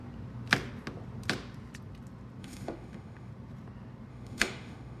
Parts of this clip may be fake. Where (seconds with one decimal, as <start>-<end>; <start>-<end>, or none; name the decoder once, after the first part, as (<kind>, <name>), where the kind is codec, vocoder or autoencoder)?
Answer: 2.4-3.3 (autoencoder, DAC-VAE); 4.1-5.0